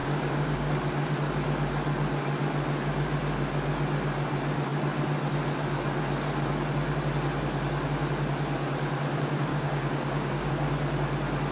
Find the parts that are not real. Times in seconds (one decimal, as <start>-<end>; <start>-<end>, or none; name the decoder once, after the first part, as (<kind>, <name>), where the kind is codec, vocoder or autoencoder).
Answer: 0.0-0.7 (codec, DAC); 9.5-10.5